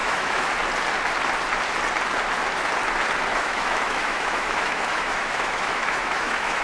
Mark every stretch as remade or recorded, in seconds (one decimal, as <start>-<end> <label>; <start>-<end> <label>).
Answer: 0.0-0.5 remade; 0.5-3.3 recorded; 3.3-6.6 remade